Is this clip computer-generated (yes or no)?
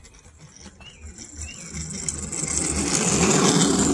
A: no